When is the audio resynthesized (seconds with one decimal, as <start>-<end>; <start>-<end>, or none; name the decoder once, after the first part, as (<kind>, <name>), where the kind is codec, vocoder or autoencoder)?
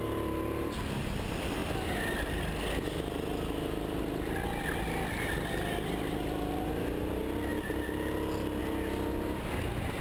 none